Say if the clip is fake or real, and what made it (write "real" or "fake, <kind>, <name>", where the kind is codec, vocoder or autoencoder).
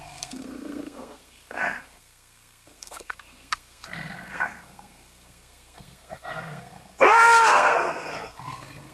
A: fake, codec, SNAC